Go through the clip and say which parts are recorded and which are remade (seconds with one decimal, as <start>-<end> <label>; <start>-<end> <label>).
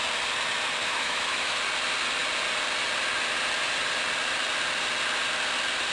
0.0-0.8 recorded; 0.8-1.6 remade; 1.6-5.9 recorded